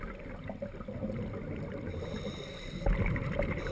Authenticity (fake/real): real